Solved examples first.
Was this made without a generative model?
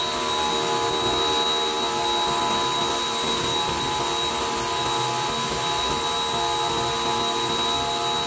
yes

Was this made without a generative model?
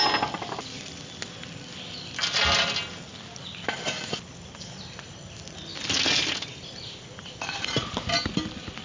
yes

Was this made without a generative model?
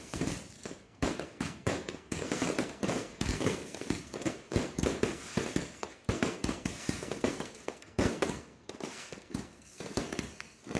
no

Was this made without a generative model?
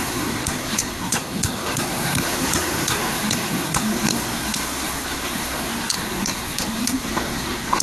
no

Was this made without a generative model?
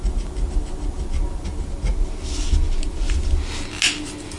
yes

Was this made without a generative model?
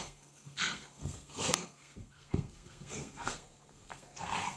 no